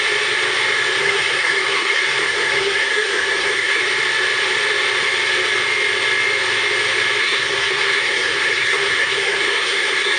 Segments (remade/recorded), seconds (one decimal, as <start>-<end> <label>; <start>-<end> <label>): 0.0-1.0 recorded; 1.0-3.8 remade; 3.8-7.2 recorded; 7.2-10.2 remade